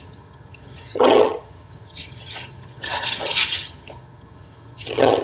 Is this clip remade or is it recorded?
remade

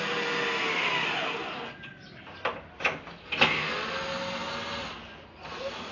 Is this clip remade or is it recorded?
recorded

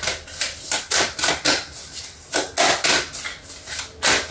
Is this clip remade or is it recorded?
recorded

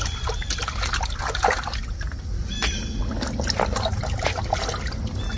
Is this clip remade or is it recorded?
recorded